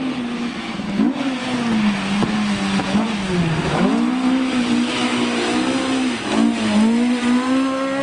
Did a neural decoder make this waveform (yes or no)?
no